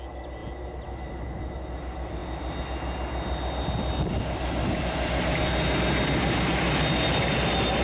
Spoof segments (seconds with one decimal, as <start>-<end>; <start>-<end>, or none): none